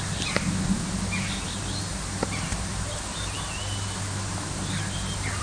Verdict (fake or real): real